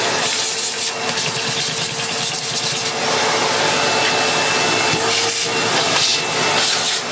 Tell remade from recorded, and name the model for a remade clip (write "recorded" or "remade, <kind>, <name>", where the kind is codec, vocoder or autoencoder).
recorded